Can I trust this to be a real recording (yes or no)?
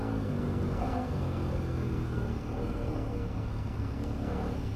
no